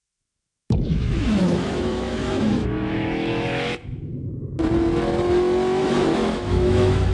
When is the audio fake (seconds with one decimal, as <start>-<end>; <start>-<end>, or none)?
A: 0.0-4.3; 5.8-7.1